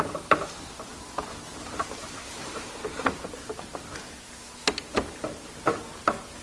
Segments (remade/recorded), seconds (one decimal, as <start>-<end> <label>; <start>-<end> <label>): 0.0-6.4 recorded